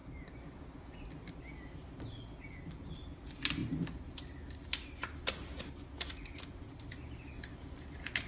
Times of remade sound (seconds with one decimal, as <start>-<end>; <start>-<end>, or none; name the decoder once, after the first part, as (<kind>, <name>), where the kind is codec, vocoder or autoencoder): none